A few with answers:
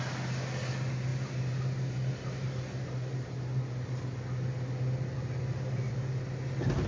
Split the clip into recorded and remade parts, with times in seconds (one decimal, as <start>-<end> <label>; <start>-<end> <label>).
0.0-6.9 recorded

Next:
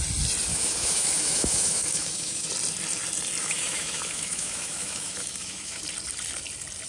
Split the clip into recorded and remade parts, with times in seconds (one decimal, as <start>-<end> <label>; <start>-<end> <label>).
0.0-0.5 recorded; 0.5-2.5 remade; 2.5-3.4 recorded; 3.4-5.8 remade; 5.8-6.9 recorded

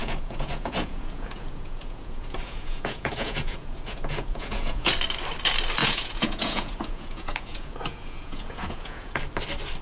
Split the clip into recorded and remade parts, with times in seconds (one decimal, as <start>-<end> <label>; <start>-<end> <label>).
0.0-4.9 remade; 4.9-5.8 recorded; 5.8-9.2 remade; 9.2-9.8 recorded

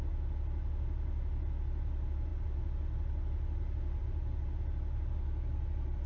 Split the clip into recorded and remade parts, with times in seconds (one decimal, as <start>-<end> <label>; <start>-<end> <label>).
0.0-6.1 recorded

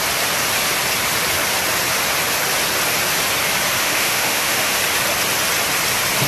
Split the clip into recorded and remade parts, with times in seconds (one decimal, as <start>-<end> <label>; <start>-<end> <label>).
0.0-3.8 recorded; 3.8-4.8 remade; 4.8-6.3 recorded

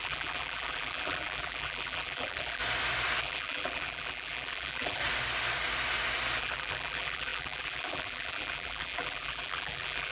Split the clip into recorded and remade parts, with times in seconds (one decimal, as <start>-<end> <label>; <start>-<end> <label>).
0.0-2.6 remade; 2.6-3.2 recorded; 3.2-5.0 remade; 5.0-6.4 recorded; 6.4-10.1 remade

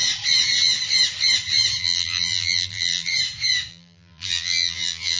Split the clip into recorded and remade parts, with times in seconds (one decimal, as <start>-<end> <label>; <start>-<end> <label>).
0.0-1.8 recorded; 1.8-3.1 remade; 3.1-3.7 recorded; 3.7-5.2 remade